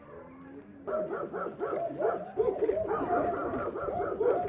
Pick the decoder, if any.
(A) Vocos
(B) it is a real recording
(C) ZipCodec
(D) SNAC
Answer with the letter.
B